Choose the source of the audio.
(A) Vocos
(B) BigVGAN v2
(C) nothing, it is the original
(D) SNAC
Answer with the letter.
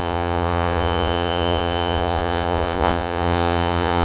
A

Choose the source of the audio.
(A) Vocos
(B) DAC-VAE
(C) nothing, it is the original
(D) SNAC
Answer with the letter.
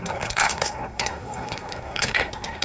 D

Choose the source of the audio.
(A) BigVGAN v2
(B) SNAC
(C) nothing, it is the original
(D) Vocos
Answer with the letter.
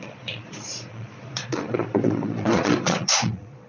D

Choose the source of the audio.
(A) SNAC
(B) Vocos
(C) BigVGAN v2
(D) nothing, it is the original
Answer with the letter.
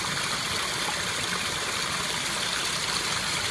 D